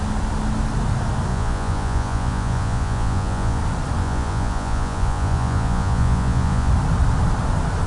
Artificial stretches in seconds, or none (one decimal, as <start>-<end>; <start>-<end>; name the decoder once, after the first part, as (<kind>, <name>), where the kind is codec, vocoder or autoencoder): 1.3-3.6 (vocoder, Vocos); 4.0-6.7